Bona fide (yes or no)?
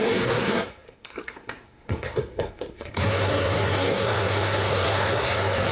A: no